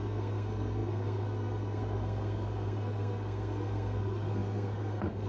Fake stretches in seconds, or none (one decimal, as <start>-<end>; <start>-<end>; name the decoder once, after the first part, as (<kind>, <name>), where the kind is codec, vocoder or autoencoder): 0.0-5.3 (codec, SNAC)